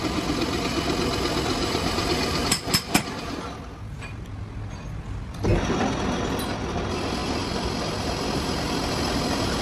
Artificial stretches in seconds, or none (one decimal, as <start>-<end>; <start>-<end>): 1.6-3.3